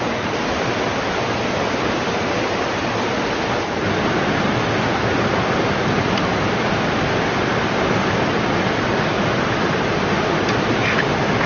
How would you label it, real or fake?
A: real